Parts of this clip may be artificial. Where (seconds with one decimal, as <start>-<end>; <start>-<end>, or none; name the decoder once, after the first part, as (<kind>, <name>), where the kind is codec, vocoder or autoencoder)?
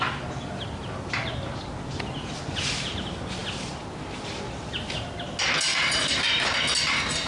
5.7-6.8 (vocoder, BigVGAN v2)